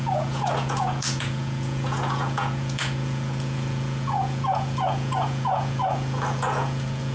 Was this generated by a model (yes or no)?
yes